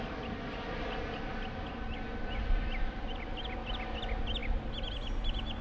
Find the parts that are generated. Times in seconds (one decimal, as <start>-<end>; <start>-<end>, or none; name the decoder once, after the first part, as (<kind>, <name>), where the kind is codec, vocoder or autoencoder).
none